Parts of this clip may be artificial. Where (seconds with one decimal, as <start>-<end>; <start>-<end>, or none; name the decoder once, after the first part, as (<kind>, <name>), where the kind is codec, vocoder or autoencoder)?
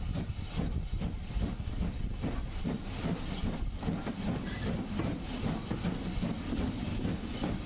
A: 0.0-3.4 (vocoder, BigVGAN v2); 6.5-6.9